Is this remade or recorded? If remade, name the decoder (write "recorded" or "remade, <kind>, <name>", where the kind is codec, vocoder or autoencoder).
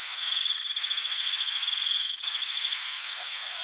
remade, codec, SNAC